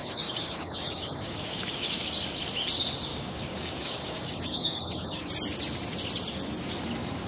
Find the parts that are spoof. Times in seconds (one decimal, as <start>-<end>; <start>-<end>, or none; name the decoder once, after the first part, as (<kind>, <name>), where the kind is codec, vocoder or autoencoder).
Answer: 0.0-2.1 (codec, DAC); 3.1-5.3

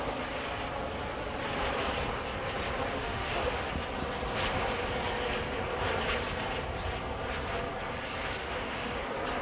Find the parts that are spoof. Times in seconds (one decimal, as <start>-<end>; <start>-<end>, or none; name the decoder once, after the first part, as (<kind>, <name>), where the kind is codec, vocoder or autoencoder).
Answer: 2.9-3.7 (autoencoder, DAC-VAE); 8.4-9.0

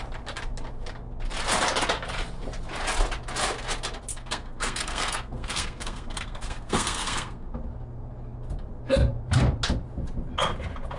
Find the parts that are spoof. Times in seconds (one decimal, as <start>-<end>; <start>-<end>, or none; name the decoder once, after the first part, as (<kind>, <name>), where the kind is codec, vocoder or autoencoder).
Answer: 4.1-7.5 (codec, SNAC)

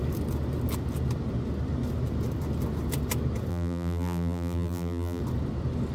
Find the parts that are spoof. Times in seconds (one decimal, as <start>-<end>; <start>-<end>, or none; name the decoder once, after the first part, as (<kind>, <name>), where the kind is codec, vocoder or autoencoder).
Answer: 3.5-5.2 (vocoder, BigVGAN v2)

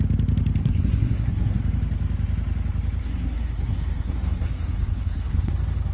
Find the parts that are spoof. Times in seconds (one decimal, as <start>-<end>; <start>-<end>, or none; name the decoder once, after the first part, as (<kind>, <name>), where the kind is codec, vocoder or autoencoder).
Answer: 0.6-1.6 (codec, SNAC); 3.0-5.5

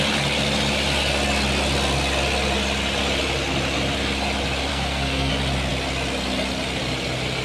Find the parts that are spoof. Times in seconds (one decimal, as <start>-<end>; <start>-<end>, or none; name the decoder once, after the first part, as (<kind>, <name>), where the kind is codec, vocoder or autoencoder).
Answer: 4.7-5.3 (codec, SNAC)